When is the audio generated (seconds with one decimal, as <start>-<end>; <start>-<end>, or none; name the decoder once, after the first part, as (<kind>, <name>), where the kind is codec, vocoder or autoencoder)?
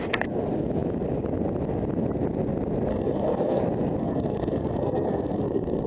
2.9-3.6 (codec, SNAC); 4.0-5.9